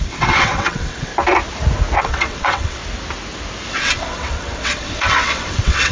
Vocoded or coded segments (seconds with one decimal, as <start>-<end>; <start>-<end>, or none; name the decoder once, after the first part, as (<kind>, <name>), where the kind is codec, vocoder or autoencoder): 0.0-1.1 (vocoder, WaveNeXt); 2.0-2.8; 3.7-5.9